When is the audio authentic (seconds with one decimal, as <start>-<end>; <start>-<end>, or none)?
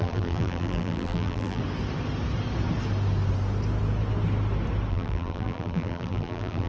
1.6-4.9